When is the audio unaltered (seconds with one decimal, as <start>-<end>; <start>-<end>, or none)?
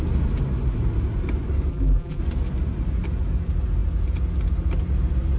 0.0-1.7; 2.2-5.4